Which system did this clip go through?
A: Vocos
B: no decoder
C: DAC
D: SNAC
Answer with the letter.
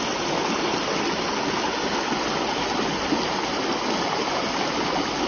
B